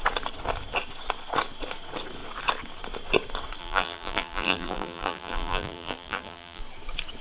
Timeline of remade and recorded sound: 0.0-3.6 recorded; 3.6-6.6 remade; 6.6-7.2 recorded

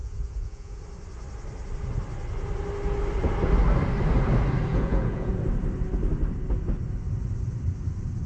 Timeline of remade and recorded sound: 0.0-0.8 remade; 0.8-4.7 recorded; 4.7-5.3 remade; 5.3-8.3 recorded

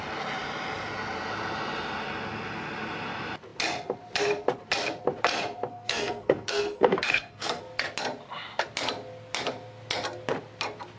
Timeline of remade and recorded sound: 0.0-5.7 recorded; 5.7-7.6 remade; 7.6-11.0 recorded

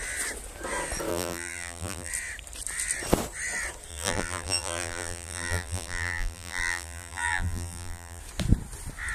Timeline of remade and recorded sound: 0.0-1.1 recorded; 1.1-2.1 remade; 2.1-3.9 recorded; 3.9-8.2 remade; 8.2-9.1 recorded

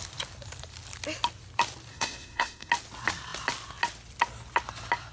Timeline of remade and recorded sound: 0.0-1.9 recorded; 1.9-2.7 remade; 2.7-5.1 recorded

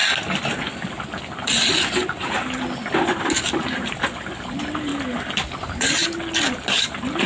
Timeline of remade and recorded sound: 0.0-4.4 recorded; 4.4-4.9 remade; 4.9-5.6 recorded; 5.6-6.0 remade; 6.0-6.6 recorded; 6.6-7.3 remade